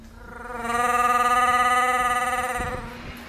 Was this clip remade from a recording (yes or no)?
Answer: no